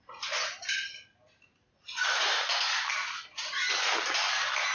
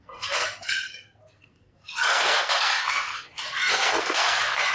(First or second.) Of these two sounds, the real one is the first